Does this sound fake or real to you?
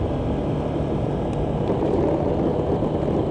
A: real